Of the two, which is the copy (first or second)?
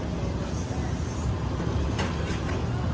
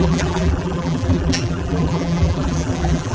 second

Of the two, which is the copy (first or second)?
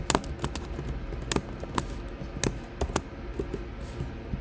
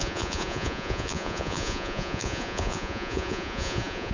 second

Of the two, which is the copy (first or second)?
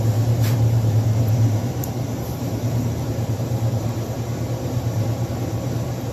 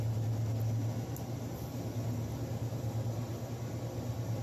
first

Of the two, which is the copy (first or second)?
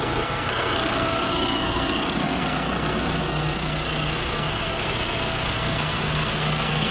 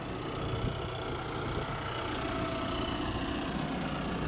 first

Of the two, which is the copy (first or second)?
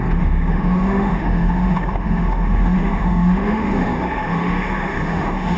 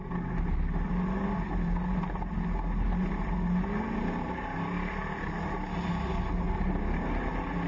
first